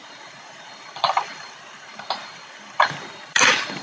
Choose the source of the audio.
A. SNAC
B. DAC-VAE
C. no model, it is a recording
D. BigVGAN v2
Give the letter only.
D